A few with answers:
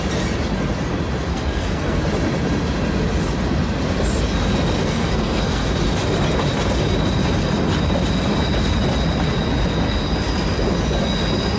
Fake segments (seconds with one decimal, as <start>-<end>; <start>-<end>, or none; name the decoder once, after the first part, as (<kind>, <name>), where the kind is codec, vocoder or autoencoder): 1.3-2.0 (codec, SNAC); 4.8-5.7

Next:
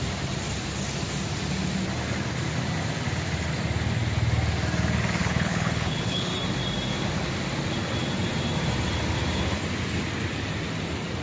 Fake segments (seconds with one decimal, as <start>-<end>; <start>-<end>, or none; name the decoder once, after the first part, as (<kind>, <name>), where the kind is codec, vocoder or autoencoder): 5.2-6.3 (codec, HILCodec)

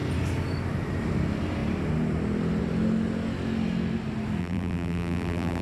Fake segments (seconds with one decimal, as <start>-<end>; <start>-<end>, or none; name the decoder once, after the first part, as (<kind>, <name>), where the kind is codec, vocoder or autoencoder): 4.4-5.6 (vocoder, BigVGAN v2)

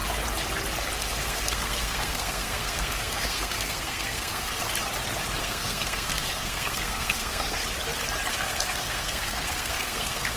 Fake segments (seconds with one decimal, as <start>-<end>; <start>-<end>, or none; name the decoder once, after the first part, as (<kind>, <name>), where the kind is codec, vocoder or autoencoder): 1.0-4.6 (codec, SNAC); 5.4-7.6; 8.3-10.4